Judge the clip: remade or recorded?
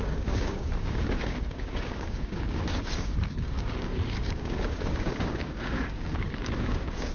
remade